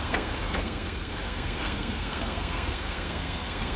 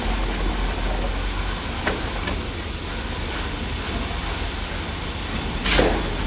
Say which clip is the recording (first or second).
second